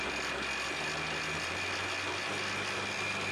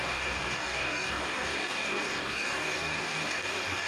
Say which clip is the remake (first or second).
second